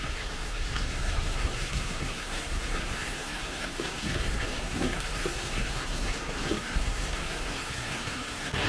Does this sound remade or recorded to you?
remade